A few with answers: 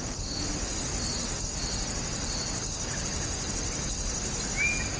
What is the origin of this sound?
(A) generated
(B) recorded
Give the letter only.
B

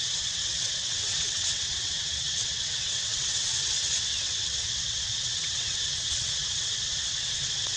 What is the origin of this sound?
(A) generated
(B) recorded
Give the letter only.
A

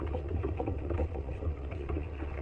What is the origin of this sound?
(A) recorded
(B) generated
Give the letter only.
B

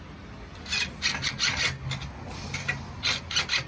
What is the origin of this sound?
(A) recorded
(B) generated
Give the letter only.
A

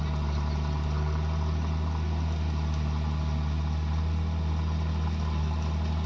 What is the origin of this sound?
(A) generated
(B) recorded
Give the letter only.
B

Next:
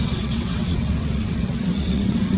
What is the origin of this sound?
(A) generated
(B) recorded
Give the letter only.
A